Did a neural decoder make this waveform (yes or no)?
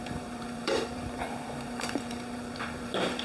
yes